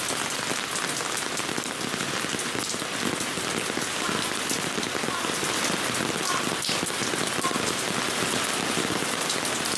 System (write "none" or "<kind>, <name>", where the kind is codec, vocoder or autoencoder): none